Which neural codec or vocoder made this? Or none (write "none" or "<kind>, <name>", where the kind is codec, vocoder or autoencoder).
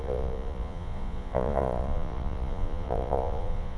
vocoder, Vocos